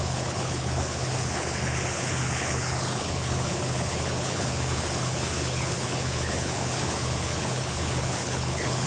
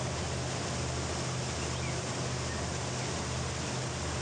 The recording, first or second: second